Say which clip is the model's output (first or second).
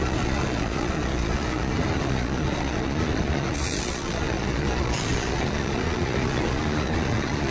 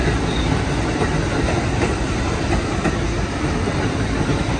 first